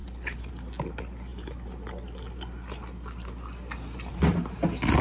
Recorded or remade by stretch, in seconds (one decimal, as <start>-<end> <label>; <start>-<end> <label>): 0.0-0.5 remade; 0.5-5.0 recorded